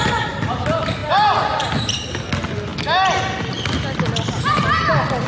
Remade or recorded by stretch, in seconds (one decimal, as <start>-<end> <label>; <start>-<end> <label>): 0.0-5.3 recorded